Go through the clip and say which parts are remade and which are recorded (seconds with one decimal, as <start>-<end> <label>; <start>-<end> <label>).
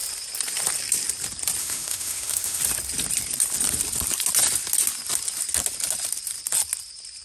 0.0-1.6 recorded; 1.6-2.6 remade; 2.6-7.2 recorded